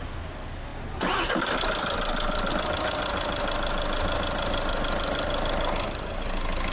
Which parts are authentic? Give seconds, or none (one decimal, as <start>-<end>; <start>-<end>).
0.0-6.7